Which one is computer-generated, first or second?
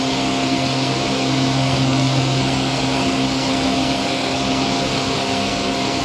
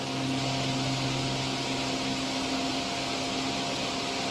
first